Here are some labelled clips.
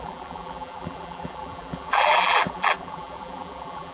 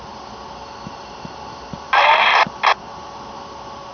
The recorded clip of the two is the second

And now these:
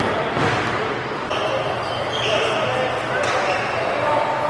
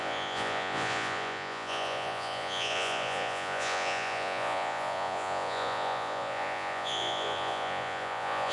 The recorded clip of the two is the first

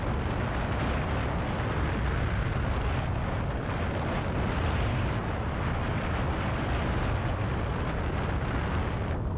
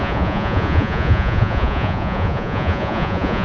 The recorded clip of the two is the first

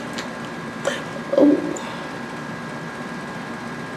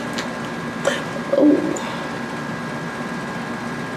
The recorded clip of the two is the second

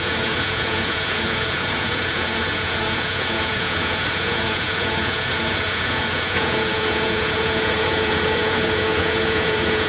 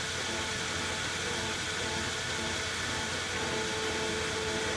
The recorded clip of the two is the second